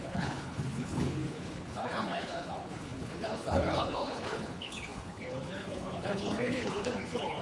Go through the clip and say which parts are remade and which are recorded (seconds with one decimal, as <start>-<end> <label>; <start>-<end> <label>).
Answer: 0.0-7.4 remade